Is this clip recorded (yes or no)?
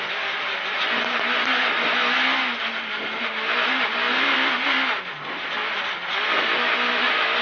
yes